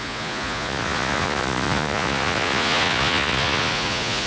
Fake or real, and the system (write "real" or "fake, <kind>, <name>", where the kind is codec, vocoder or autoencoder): fake, vocoder, Vocos